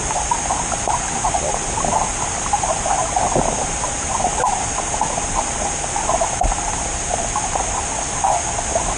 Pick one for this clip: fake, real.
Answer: fake